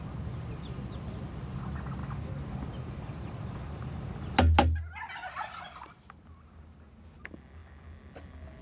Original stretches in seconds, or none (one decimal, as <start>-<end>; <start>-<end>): 0.0-8.6